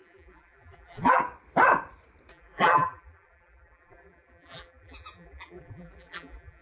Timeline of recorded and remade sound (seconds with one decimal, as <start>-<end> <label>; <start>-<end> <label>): 0.0-1.2 remade; 1.2-2.3 recorded; 2.3-6.6 remade